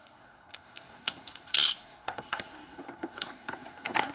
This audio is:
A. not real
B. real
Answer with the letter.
A